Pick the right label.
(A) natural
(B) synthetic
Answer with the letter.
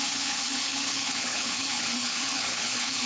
B